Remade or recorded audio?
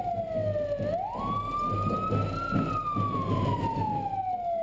recorded